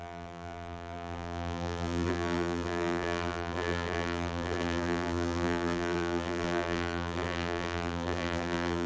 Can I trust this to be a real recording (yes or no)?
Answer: no